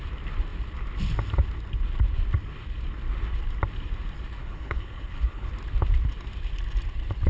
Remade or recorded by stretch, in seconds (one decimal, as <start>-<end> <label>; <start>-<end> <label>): 0.0-4.4 recorded; 4.4-5.5 remade; 5.5-7.3 recorded